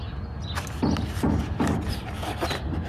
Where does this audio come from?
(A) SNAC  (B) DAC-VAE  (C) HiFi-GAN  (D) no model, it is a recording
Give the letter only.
D